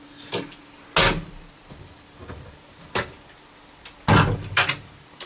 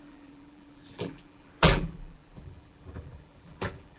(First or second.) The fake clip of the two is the second